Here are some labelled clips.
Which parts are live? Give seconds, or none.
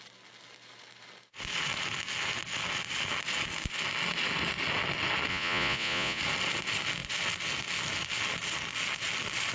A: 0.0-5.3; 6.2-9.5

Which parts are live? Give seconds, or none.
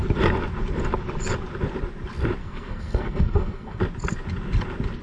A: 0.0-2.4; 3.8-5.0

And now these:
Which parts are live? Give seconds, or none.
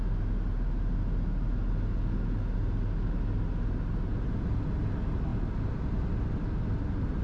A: 0.0-7.2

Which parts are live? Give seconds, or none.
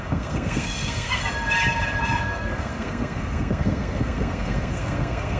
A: 1.2-2.2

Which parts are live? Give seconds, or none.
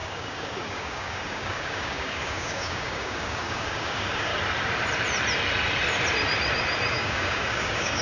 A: 4.3-6.9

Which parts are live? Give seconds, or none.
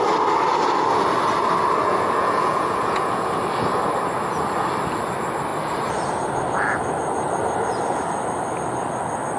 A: 0.0-1.8; 3.4-9.4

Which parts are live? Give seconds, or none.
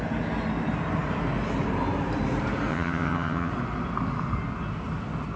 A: 0.0-2.7; 3.5-5.4